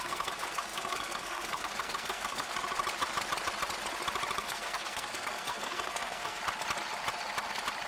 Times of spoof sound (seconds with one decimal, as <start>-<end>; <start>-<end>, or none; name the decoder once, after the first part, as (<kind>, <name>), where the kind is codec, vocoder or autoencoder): 0.0-2.5 (codec, SNAC); 4.4-6.4